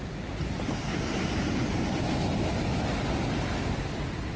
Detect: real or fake real